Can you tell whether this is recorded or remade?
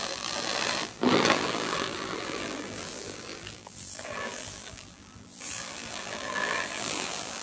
remade